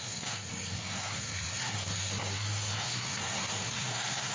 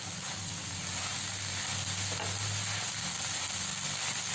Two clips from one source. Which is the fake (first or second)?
first